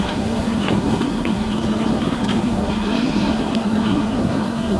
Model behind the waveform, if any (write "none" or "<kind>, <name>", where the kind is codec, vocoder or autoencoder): codec, SNAC